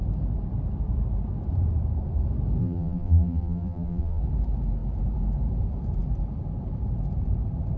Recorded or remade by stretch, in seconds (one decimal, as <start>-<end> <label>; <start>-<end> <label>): 0.0-2.6 recorded; 2.6-4.2 remade; 4.2-7.8 recorded

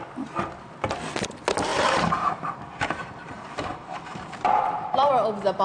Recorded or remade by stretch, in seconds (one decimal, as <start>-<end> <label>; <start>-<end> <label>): 0.0-1.7 recorded; 1.7-5.1 remade; 5.1-5.6 recorded

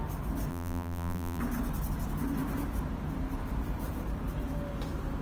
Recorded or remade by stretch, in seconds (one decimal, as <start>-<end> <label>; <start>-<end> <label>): 0.0-0.5 recorded; 0.5-1.4 remade; 1.4-5.2 recorded

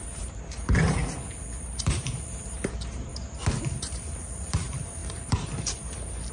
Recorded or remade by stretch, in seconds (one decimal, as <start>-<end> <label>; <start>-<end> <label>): 0.0-1.0 remade; 1.0-1.6 recorded; 1.6-3.1 remade; 3.1-3.6 recorded; 3.6-6.3 remade

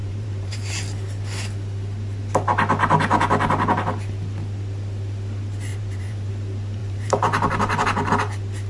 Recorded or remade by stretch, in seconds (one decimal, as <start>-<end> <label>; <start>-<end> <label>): 0.0-0.7 remade; 0.7-5.7 recorded; 5.7-6.3 remade; 6.3-6.8 recorded; 6.8-8.1 remade; 8.1-8.7 recorded

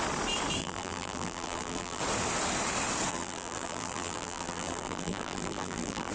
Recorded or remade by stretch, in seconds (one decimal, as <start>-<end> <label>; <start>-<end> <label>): 0.0-0.6 recorded; 0.6-2.0 remade; 2.0-3.1 recorded; 3.1-6.1 remade

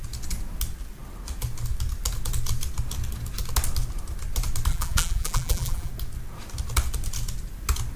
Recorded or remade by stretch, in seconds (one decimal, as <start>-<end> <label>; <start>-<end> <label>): 0.0-4.7 recorded; 4.7-5.9 remade; 5.9-8.0 recorded

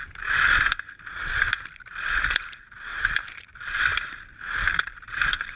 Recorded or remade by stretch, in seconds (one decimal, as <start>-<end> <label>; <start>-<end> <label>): 0.0-1.3 remade; 1.3-2.9 recorded; 2.9-5.6 remade